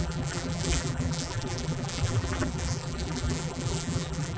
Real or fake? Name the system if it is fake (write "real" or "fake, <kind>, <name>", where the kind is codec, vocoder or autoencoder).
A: fake, vocoder, BigVGAN v2